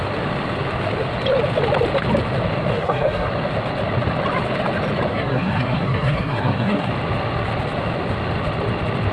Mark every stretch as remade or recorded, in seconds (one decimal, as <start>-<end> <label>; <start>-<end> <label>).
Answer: 0.0-2.7 recorded; 2.7-3.3 remade; 3.3-5.1 recorded; 5.1-6.9 remade; 6.9-9.1 recorded